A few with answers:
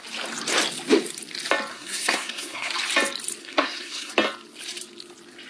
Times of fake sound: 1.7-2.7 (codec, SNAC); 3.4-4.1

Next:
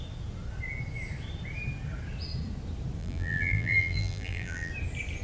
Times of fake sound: 3.0-4.7 (vocoder, BigVGAN v2)